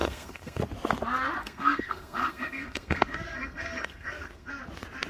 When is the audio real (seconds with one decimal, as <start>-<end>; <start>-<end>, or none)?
0.6-1.4; 4.5-5.1